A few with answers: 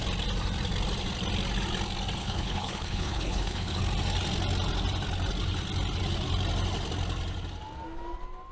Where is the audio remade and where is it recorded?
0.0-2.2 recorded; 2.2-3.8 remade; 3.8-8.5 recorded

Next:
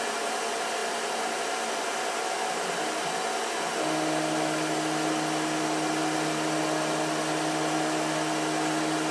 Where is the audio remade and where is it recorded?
0.0-9.1 recorded

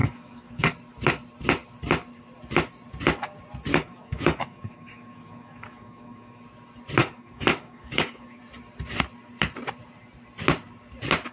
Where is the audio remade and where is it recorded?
0.0-0.7 remade; 0.7-3.7 recorded; 3.7-6.4 remade; 6.4-7.0 recorded; 7.0-8.4 remade; 8.4-11.3 recorded

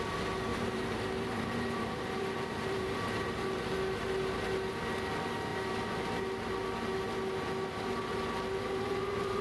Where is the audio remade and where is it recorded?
0.0-0.5 recorded; 0.5-3.6 remade; 3.6-9.4 recorded